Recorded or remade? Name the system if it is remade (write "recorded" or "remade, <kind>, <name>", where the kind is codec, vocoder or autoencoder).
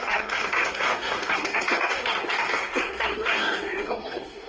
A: remade, codec, SNAC